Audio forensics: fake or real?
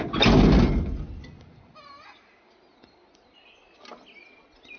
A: real